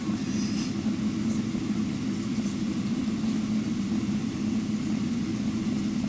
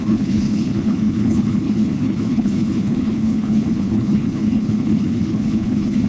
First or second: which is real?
first